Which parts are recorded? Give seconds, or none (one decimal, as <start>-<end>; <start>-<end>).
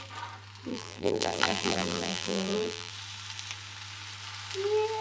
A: 0.0-0.7; 2.9-5.0